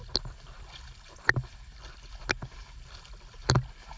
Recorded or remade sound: recorded